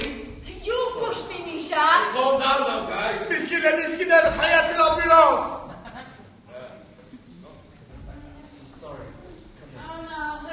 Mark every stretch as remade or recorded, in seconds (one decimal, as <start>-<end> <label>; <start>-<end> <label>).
0.0-10.5 recorded